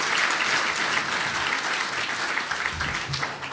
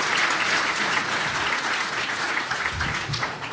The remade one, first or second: second